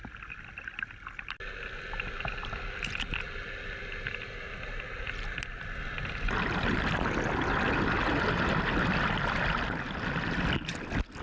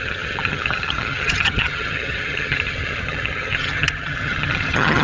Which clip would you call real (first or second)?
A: first